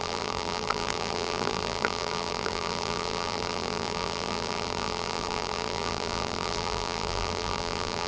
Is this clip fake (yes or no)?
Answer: yes